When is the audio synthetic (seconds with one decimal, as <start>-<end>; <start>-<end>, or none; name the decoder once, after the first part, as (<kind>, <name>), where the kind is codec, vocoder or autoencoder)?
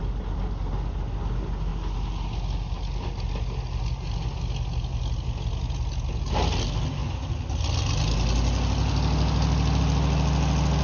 none